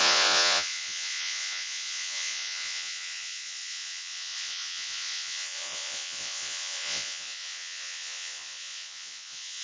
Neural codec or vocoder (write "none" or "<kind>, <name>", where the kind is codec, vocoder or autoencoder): vocoder, Vocos